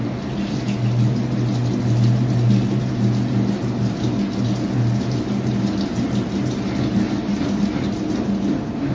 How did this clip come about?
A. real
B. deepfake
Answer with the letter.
A